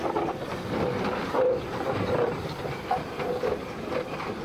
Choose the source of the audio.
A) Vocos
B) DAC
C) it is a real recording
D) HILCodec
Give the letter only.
C